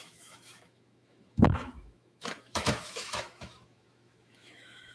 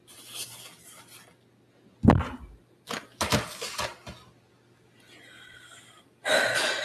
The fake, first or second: first